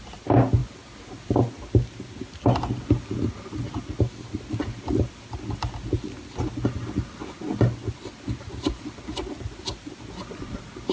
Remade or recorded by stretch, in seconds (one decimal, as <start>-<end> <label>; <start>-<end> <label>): 0.0-10.9 recorded